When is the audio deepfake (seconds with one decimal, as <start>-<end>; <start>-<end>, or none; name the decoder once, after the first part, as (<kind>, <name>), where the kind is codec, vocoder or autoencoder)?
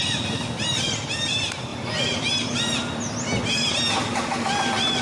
1.7-2.4 (vocoder, BigVGAN v2)